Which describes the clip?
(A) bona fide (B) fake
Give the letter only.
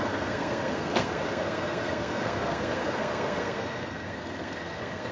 B